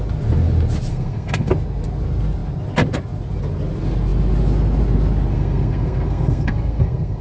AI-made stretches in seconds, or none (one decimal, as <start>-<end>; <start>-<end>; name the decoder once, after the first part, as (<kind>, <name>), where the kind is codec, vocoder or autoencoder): 0.9-1.5 (codec, SNAC); 5.3-7.2